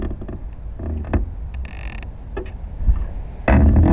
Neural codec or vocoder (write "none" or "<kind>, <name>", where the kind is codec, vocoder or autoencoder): none